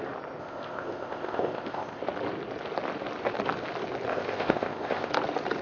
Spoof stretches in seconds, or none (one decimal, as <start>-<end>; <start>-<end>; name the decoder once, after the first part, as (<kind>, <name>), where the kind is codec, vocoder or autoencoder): 0.4-2.0 (codec, ZipCodec); 4.1-5.1